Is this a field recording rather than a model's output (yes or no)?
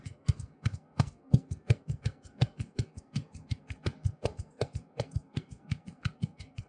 no